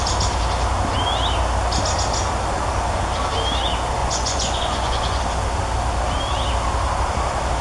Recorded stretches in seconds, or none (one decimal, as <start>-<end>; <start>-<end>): 0.0-4.0; 5.2-7.6